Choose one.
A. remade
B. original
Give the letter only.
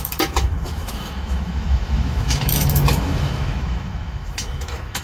A